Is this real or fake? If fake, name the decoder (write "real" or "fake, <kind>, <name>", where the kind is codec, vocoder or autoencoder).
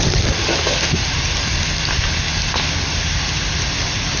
real